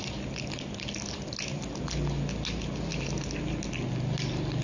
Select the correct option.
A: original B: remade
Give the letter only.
A